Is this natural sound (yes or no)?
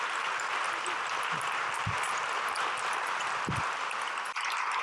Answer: yes